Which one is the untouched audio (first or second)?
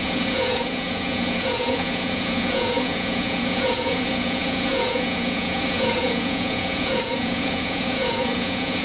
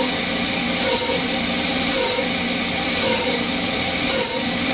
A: second